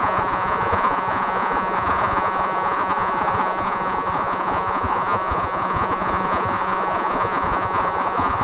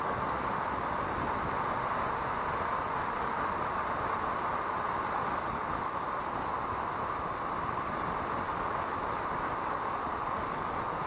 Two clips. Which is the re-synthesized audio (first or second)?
first